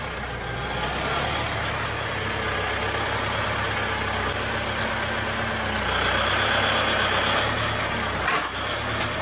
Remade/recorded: recorded